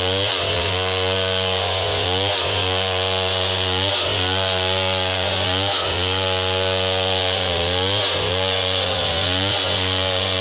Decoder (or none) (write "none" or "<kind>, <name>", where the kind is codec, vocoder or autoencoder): vocoder, Vocos